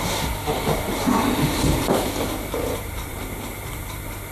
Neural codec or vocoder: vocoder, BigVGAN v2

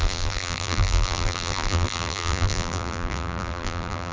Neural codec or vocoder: vocoder, BigVGAN v2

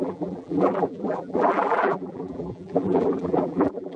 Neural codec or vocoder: vocoder, BigVGAN v2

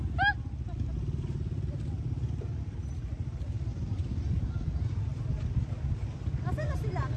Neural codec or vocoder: none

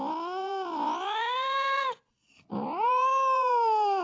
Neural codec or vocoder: vocoder, BigVGAN v2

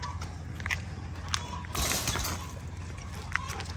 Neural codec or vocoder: none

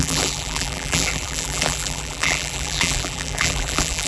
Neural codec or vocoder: vocoder, BigVGAN v2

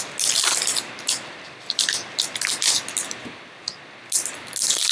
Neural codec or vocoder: none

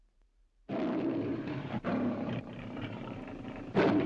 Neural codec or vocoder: vocoder, BigVGAN v2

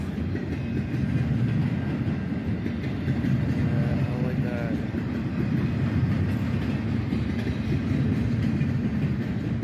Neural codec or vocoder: none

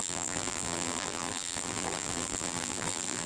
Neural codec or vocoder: vocoder, BigVGAN v2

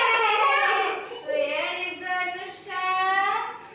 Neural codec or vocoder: none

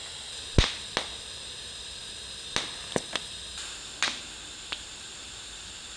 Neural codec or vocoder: none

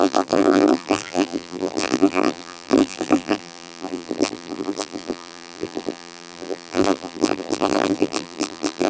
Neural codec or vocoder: vocoder, BigVGAN v2